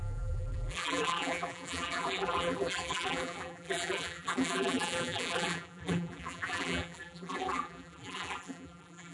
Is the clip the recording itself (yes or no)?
no